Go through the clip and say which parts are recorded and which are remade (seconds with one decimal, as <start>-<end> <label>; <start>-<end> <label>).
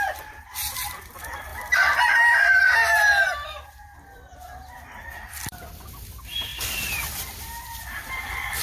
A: 0.0-6.5 remade; 6.5-7.0 recorded; 7.0-8.6 remade